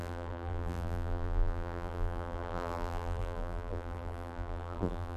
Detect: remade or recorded remade